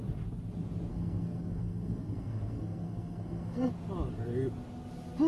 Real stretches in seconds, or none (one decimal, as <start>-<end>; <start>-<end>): 0.0-0.9; 3.7-5.3